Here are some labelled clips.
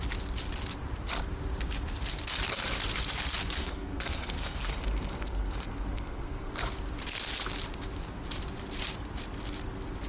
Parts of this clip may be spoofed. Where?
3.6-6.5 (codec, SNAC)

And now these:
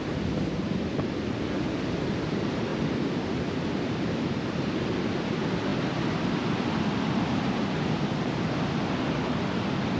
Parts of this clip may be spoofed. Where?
none

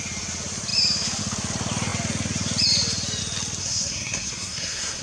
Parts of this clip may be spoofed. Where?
3.6-5.0 (codec, SNAC)

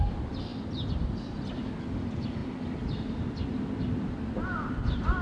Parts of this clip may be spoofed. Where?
none

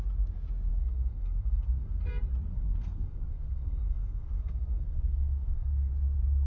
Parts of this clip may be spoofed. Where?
0.7-2.1 (codec, SNAC); 2.5-5.9

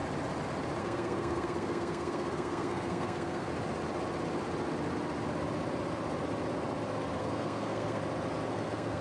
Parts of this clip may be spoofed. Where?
0.8-3.5 (codec, SNAC); 7.2-8.0; 8.5-9.0

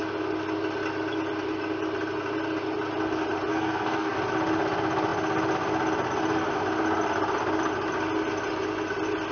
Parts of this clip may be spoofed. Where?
3.5-4.2 (codec, SNAC)